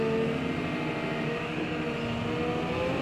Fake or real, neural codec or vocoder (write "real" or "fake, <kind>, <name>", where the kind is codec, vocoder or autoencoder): real